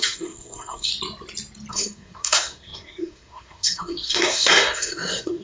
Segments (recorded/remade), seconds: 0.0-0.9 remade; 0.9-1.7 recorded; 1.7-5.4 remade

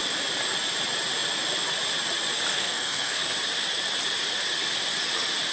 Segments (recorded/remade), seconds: 0.0-2.5 recorded; 2.5-3.2 remade; 3.2-5.5 recorded

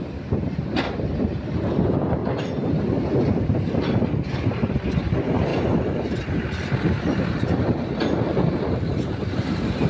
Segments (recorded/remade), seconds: 0.0-2.2 remade; 2.2-3.4 recorded; 3.4-9.9 remade